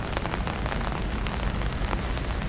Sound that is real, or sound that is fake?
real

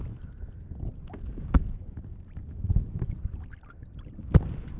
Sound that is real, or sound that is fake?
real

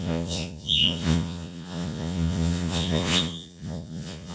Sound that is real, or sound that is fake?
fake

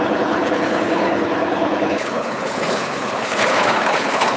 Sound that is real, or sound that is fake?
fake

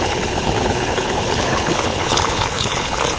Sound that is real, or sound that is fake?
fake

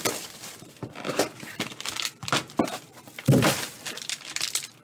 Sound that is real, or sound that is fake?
fake